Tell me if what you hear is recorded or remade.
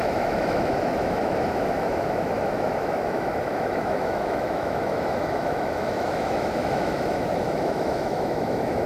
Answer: remade